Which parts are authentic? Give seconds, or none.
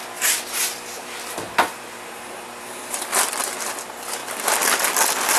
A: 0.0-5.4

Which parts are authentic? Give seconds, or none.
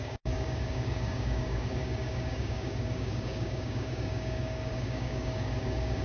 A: none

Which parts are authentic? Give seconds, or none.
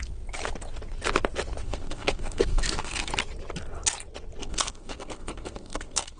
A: 0.0-1.6; 3.1-4.4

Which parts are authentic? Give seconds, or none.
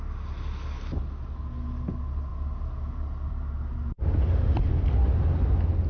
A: 0.0-5.9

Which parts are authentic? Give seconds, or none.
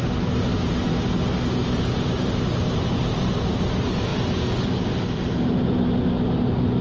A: 0.0-6.8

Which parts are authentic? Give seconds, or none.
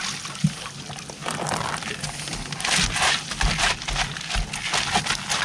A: 0.0-5.4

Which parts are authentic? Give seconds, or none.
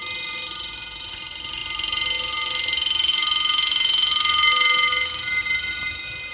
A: 0.0-6.3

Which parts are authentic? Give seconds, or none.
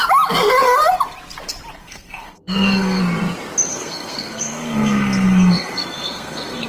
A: 0.0-1.8; 3.0-3.7